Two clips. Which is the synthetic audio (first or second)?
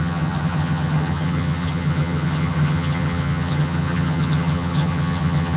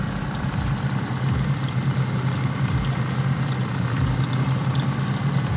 first